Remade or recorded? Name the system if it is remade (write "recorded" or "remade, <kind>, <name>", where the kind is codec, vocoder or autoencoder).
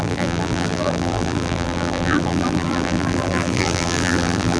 remade, vocoder, BigVGAN v2